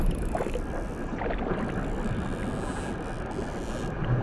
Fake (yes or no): no